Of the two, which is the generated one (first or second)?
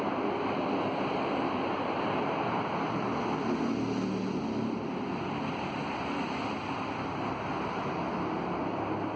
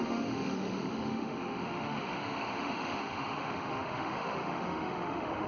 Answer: second